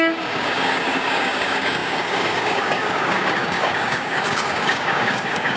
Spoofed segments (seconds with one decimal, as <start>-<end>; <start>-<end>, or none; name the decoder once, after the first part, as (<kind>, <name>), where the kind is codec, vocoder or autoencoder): 0.0-5.6 (codec, DAC)